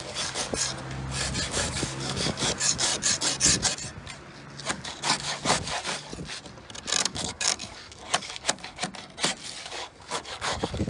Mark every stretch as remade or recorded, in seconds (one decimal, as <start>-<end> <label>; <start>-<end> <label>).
0.0-0.5 remade; 0.5-1.5 recorded; 1.5-2.9 remade; 2.9-4.7 recorded; 4.7-6.1 remade; 6.1-7.0 recorded; 7.0-8.8 remade; 8.8-9.6 recorded; 9.6-10.9 remade